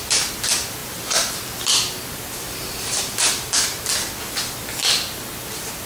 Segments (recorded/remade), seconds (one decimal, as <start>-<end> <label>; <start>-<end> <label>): 0.0-5.9 recorded